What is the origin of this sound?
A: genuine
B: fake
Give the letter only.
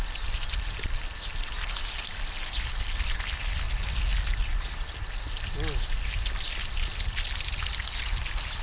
A